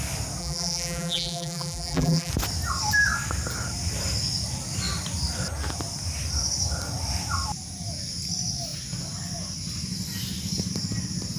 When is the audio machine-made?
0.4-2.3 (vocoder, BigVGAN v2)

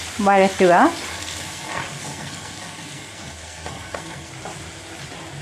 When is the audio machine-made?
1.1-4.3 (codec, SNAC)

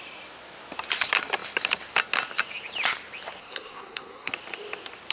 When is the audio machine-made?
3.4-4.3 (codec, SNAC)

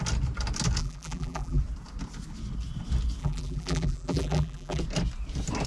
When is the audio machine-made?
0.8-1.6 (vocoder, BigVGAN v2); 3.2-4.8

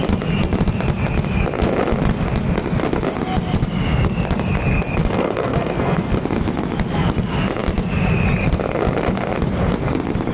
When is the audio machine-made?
5.0-6.2 (codec, SNAC)